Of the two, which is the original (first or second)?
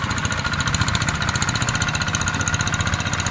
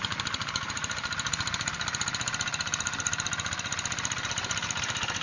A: first